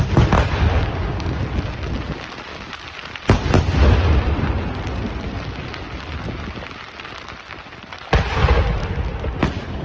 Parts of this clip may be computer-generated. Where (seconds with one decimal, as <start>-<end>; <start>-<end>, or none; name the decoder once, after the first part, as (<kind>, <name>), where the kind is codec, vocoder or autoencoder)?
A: 0.9-1.4 (codec, DAC)